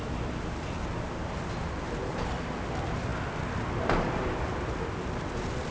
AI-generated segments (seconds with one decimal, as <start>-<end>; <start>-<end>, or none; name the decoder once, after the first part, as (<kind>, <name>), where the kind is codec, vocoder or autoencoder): none